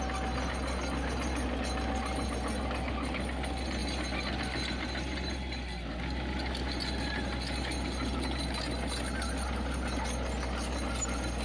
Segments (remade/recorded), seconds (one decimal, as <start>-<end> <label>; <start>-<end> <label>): 0.0-11.4 recorded